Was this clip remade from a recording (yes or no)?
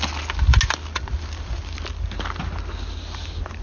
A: no